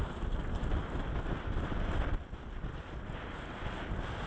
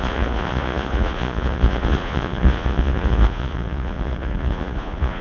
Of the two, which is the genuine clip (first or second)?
first